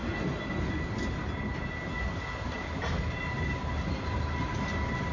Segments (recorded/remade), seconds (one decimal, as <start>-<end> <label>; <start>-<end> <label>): 0.0-5.1 recorded